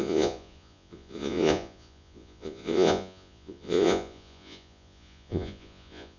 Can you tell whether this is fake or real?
fake